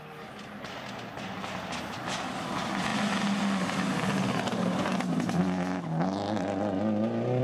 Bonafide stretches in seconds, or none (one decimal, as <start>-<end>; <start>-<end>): 0.0-7.4